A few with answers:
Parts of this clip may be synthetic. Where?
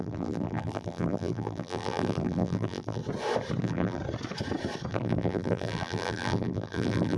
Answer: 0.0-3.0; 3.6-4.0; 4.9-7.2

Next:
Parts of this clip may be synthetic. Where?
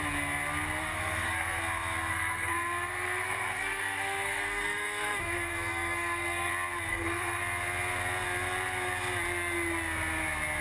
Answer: 0.8-1.6; 2.1-6.5; 6.9-7.4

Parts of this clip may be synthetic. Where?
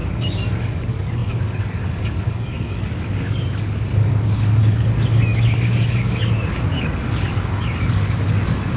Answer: 0.0-8.8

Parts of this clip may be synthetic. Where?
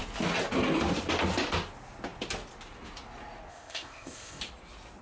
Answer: 3.5-4.4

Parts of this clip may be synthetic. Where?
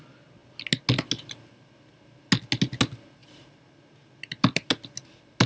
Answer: none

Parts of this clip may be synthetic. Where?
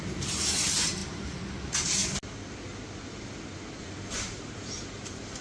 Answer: 0.0-2.0; 3.8-5.4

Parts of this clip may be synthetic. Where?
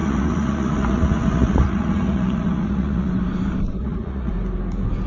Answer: 0.0-3.1; 3.8-4.3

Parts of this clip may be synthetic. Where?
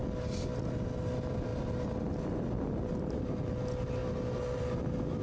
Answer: none